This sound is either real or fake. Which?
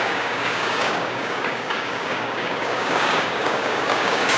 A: fake